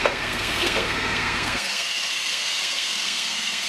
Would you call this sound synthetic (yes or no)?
yes